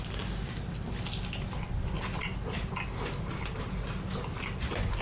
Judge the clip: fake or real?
real